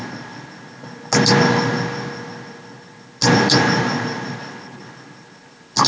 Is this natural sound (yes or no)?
yes